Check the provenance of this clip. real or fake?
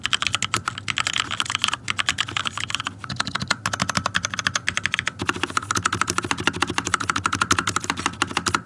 real